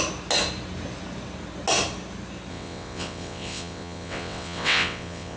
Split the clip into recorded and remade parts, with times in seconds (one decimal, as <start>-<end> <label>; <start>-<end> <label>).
0.0-2.5 recorded; 2.5-5.4 remade